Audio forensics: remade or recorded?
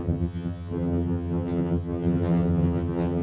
remade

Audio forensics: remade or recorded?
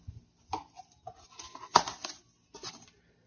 recorded